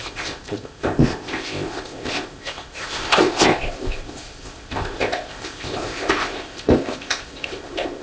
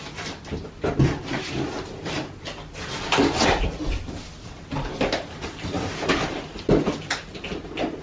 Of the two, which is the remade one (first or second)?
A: first